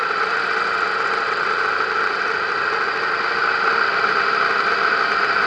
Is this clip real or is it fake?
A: real